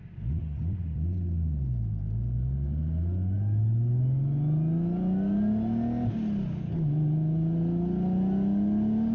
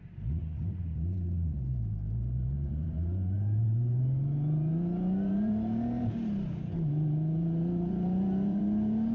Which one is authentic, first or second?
first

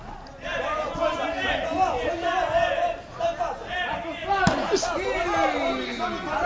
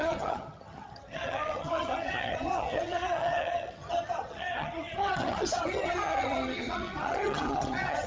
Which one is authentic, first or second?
first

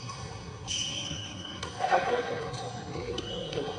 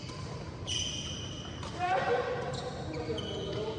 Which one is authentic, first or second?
second